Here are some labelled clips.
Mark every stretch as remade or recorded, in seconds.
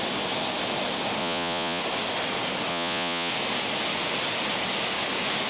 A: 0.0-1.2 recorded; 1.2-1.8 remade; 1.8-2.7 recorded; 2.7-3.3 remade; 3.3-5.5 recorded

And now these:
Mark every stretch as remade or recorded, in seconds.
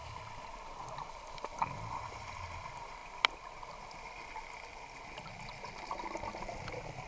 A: 0.0-7.1 recorded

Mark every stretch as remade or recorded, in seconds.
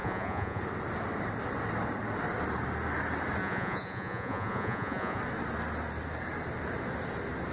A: 0.0-0.6 remade; 0.6-3.4 recorded; 3.4-5.2 remade; 5.2-7.5 recorded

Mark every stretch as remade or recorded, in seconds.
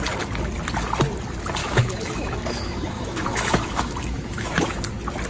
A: 0.0-1.6 recorded; 1.6-4.8 remade; 4.8-5.3 recorded